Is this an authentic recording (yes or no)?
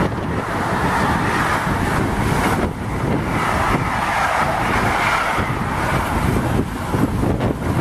yes